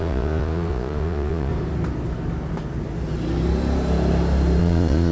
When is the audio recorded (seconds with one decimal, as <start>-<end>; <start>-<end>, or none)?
1.5-4.6